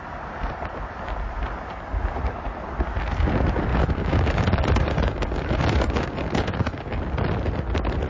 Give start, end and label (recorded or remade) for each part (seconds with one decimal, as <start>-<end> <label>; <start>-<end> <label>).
0.0-3.7 recorded; 3.7-7.0 remade; 7.0-8.1 recorded